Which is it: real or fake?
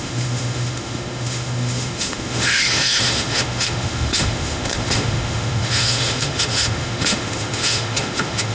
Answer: fake